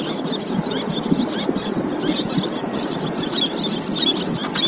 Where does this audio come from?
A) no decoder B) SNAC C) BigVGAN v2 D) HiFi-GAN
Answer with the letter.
A